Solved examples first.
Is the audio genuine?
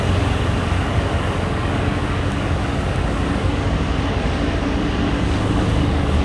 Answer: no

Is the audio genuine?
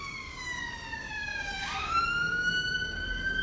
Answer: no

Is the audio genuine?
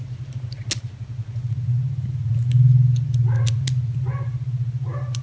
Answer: yes